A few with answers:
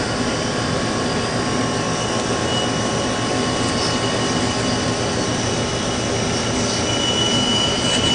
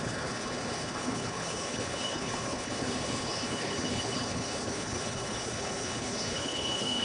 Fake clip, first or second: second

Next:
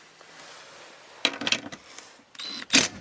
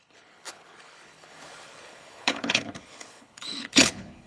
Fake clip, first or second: second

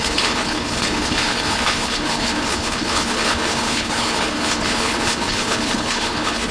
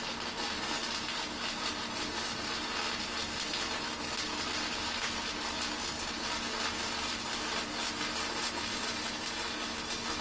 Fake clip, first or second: first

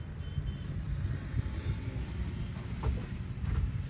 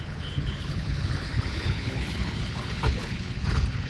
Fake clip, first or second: second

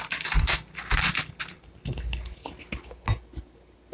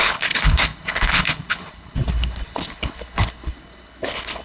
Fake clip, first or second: second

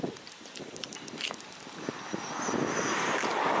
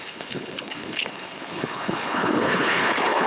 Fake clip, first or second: second